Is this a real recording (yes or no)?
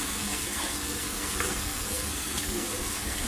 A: no